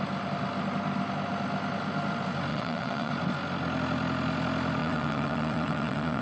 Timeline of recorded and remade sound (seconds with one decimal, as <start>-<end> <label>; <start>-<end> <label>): 0.0-2.5 recorded; 2.5-3.1 remade; 3.1-4.8 recorded; 4.8-6.2 remade